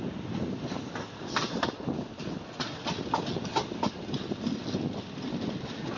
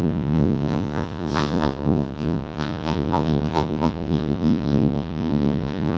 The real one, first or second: first